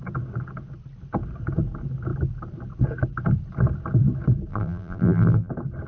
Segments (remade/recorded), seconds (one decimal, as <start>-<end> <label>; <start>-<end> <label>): 0.0-4.5 recorded; 4.5-5.5 remade; 5.5-5.9 recorded